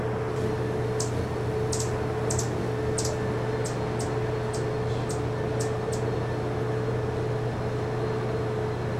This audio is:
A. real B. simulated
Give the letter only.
A